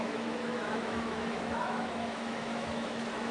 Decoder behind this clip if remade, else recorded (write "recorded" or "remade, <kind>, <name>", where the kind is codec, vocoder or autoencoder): remade, autoencoder, DAC-VAE